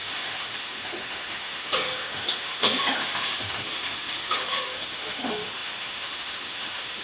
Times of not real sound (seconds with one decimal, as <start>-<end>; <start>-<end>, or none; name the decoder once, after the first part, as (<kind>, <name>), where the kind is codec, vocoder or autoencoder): 0.0-7.0 (autoencoder, DAC-VAE)